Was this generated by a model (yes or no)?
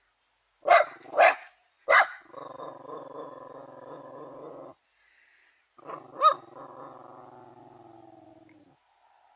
no